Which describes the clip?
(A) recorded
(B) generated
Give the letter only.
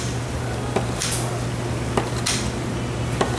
A